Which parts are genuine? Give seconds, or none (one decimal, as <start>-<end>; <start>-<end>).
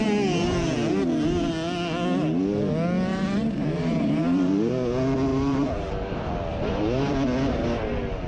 0.0-3.1; 4.7-5.3; 5.9-6.5; 7.1-8.3